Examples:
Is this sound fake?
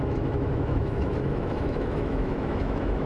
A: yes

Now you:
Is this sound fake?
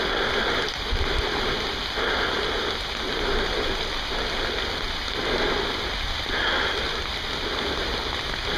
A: no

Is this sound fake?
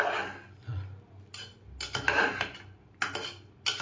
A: no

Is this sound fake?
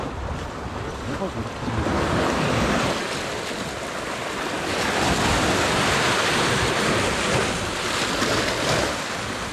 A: no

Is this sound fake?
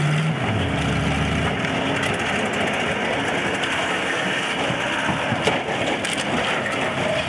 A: no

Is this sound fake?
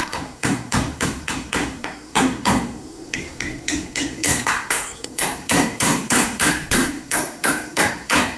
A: yes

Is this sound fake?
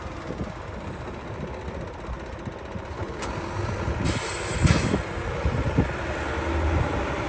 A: no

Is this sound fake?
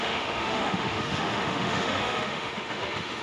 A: yes